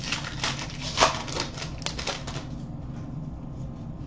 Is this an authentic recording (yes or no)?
yes